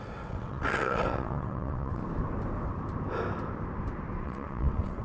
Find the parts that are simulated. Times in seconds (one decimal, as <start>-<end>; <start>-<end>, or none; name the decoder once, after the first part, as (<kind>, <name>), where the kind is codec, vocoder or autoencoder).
0.0-2.0 (vocoder, WaveNeXt); 4.2-5.0